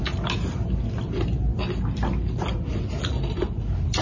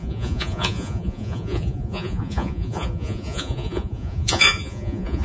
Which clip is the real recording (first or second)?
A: first